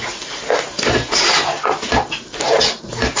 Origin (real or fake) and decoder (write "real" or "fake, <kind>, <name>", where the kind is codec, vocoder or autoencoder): real